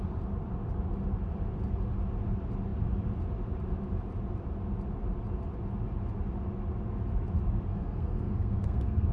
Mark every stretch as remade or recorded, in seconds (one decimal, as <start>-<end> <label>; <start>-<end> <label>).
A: 0.0-7.7 recorded; 7.7-9.1 remade